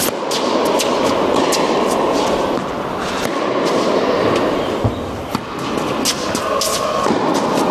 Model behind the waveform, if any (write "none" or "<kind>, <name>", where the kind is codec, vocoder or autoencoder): none